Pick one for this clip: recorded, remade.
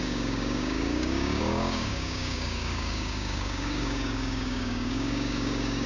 remade